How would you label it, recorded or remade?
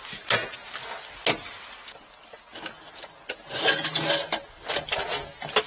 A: recorded